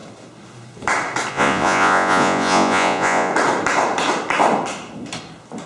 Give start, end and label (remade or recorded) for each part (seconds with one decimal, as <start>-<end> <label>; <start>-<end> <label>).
0.0-1.3 recorded; 1.3-3.3 remade; 3.3-5.7 recorded